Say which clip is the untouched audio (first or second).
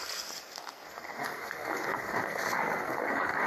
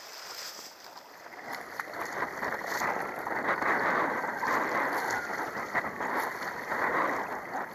second